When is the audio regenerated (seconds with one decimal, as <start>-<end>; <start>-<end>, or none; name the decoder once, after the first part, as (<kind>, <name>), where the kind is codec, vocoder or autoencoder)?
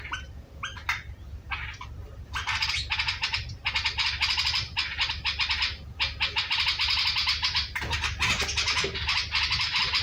none